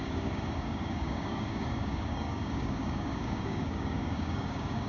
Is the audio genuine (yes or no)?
no